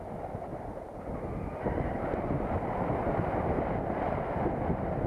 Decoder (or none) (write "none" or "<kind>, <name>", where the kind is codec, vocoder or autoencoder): none